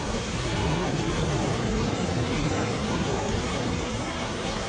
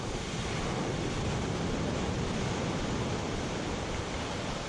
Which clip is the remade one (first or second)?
first